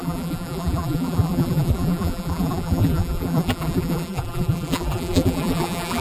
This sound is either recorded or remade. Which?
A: remade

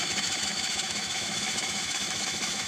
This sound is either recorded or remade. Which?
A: remade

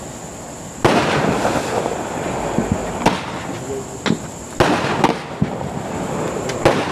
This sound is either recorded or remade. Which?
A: recorded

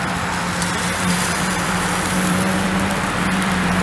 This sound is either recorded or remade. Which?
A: remade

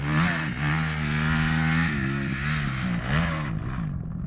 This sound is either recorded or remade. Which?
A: recorded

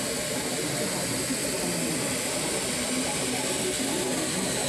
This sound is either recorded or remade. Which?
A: recorded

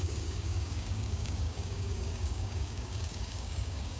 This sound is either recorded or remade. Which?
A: remade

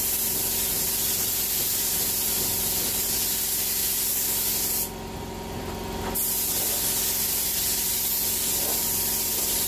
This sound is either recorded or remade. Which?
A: recorded